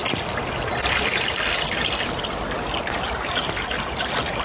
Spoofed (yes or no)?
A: no